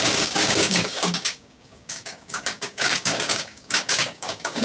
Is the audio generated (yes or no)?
yes